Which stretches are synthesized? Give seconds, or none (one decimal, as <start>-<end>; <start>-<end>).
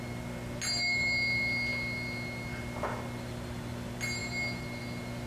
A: none